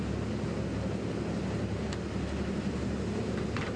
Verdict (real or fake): real